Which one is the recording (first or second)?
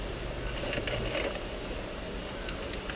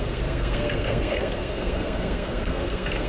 first